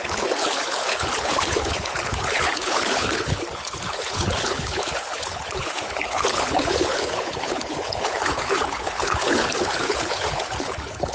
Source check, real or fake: fake